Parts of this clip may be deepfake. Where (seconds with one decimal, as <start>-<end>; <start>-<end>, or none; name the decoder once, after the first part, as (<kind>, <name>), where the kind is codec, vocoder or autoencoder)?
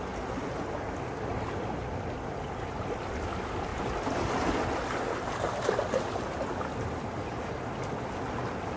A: none